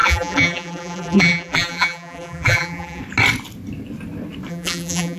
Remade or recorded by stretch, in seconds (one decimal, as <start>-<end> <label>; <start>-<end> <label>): 0.0-3.0 remade; 3.0-4.5 recorded; 4.5-5.2 remade